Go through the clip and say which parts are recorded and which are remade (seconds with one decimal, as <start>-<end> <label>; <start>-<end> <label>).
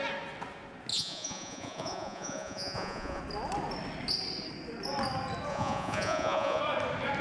0.0-0.9 recorded; 0.9-3.2 remade; 3.2-5.5 recorded; 5.5-6.6 remade; 6.6-7.2 recorded